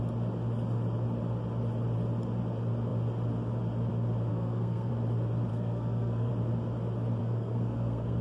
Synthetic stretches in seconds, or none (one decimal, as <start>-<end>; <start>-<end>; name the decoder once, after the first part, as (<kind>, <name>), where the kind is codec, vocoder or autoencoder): 4.3-4.9 (codec, SNAC); 5.5-6.3; 7.2-8.2